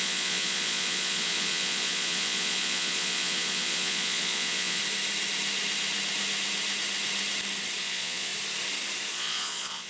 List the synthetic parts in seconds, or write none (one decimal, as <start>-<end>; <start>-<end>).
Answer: 0.0-4.8; 7.8-8.3; 9.1-9.9